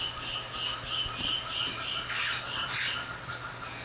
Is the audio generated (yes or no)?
no